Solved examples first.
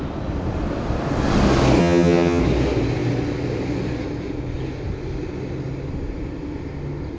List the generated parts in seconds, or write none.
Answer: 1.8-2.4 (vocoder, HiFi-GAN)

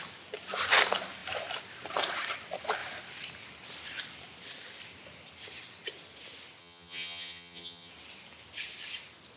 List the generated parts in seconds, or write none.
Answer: 6.6-7.9 (vocoder, HiFi-GAN)